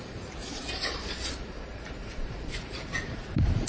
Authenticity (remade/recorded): remade